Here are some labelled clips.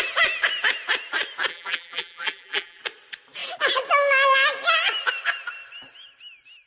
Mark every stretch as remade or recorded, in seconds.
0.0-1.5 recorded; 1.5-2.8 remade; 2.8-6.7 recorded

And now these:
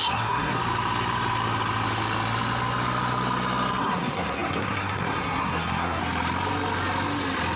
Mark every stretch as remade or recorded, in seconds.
0.0-0.6 remade; 0.6-3.8 recorded; 3.8-6.0 remade; 6.0-7.6 recorded

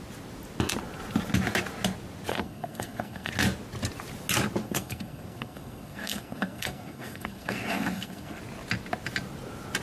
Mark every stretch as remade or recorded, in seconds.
0.0-2.3 recorded; 2.3-3.3 remade; 3.3-4.6 recorded; 4.6-8.4 remade; 8.4-9.8 recorded

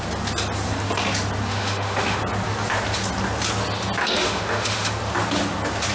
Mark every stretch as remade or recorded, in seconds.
0.0-1.5 recorded; 1.5-2.2 remade; 2.2-4.0 recorded; 4.0-4.9 remade; 4.9-5.9 recorded

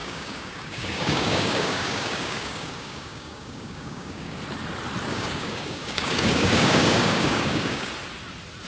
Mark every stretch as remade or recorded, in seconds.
0.0-4.4 remade; 4.4-5.1 recorded; 5.1-7.9 remade; 7.9-8.7 recorded

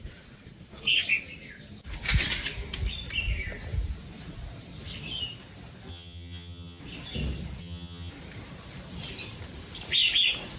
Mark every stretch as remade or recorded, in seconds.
0.0-5.9 recorded; 5.9-6.8 remade; 6.8-7.6 recorded; 7.6-8.1 remade; 8.1-10.6 recorded

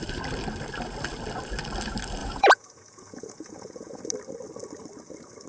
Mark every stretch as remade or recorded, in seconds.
0.0-2.2 recorded; 2.2-4.0 remade; 4.0-5.5 recorded